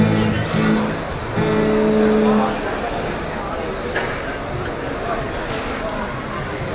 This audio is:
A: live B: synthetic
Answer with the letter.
A